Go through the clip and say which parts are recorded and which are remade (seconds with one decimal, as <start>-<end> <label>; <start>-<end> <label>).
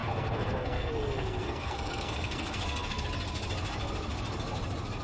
0.0-3.0 remade; 3.0-5.0 recorded